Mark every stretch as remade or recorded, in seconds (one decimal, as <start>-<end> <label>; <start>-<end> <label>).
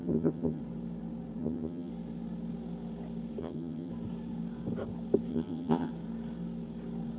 0.0-0.6 remade; 0.6-1.4 recorded; 1.4-1.9 remade; 1.9-3.4 recorded; 3.4-3.9 remade; 3.9-5.3 recorded; 5.3-5.9 remade; 5.9-7.2 recorded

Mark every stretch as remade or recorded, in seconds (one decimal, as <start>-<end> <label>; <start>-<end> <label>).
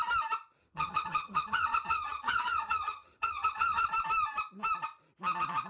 0.0-0.6 recorded; 0.6-3.9 remade; 3.9-5.7 recorded